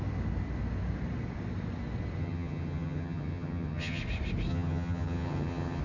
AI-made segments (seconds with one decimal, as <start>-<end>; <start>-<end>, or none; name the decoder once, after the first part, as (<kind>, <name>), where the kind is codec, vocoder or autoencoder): 2.2-4.0 (vocoder, HiFi-GAN); 4.5-5.8